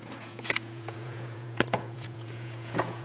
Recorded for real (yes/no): no